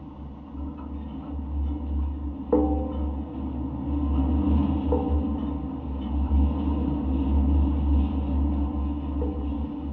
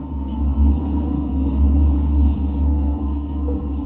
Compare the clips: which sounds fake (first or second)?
second